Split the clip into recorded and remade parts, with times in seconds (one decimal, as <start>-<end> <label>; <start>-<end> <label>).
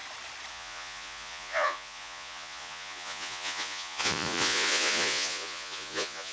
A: 0.0-0.5 recorded; 0.5-6.3 remade